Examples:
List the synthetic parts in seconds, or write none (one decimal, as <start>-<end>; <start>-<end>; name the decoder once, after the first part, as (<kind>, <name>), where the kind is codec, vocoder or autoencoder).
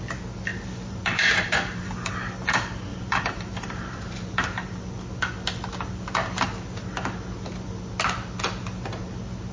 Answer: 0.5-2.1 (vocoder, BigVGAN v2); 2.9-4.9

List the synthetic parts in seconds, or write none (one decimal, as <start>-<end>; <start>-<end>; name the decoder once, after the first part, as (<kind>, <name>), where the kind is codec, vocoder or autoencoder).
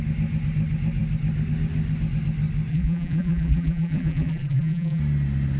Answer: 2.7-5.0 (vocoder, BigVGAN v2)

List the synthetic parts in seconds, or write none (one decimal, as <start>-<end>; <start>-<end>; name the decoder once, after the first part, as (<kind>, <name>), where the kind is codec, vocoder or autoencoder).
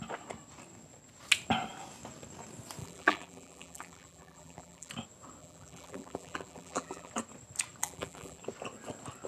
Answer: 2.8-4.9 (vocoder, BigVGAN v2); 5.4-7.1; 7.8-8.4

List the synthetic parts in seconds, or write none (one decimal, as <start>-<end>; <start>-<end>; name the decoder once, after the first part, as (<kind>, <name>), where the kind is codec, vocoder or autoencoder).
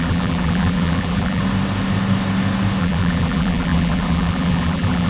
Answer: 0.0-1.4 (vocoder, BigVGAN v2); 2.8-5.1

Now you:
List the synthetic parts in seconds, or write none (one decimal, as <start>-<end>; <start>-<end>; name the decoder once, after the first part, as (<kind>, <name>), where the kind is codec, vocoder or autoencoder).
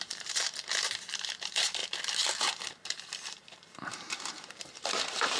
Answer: 0.0-1.8 (vocoder, BigVGAN v2); 2.4-5.4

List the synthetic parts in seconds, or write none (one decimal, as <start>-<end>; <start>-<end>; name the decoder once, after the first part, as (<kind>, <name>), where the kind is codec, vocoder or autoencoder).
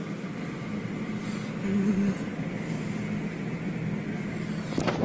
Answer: 0.0-3.8 (vocoder, BigVGAN v2); 4.6-5.0